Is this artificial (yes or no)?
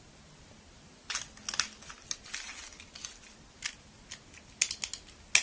no